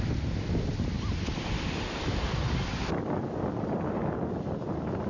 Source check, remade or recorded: recorded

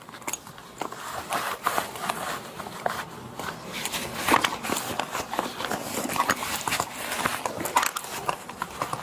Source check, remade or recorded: recorded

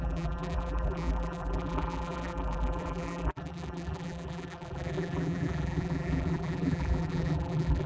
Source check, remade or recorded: remade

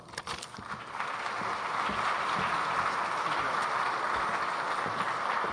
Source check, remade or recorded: recorded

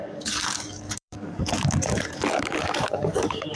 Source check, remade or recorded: remade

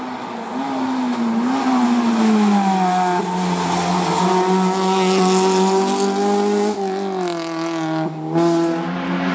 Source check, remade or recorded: recorded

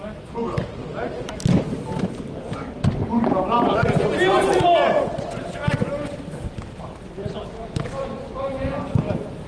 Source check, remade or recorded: recorded